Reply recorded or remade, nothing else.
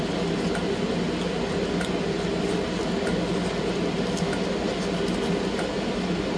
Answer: recorded